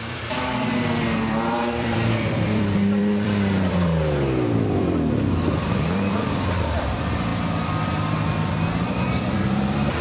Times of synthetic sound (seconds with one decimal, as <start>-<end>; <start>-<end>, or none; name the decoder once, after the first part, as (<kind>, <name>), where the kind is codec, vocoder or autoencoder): 0.0-7.3 (vocoder, BigVGAN v2); 8.3-10.0